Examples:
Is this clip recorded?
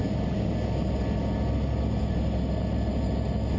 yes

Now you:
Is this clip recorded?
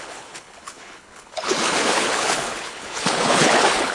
no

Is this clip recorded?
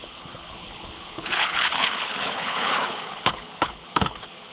no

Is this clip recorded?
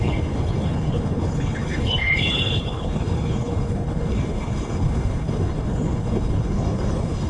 no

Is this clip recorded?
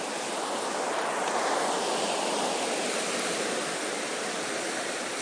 yes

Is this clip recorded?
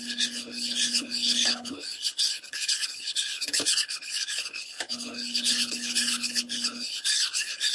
no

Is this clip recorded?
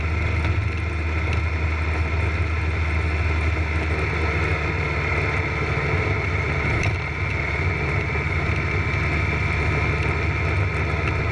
yes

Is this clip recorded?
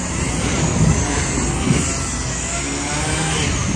yes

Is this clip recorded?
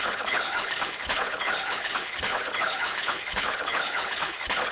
no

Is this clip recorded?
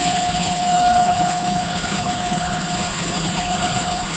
no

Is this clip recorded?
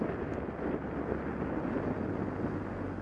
yes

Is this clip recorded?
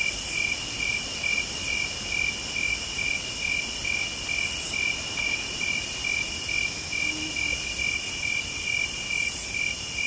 yes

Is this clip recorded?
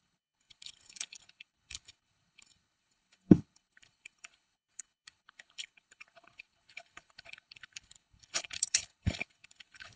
no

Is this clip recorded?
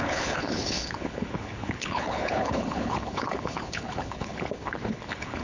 no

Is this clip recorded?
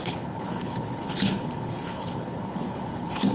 no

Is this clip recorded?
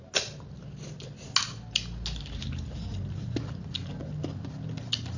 yes